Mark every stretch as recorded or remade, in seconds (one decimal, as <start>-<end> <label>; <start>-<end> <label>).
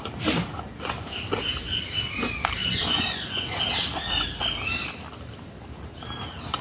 0.0-2.6 recorded; 2.6-3.6 remade; 3.6-6.6 recorded